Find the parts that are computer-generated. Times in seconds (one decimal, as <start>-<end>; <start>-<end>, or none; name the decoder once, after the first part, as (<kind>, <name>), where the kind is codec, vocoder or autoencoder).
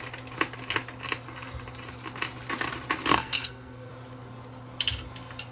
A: 3.1-3.9 (codec, SNAC)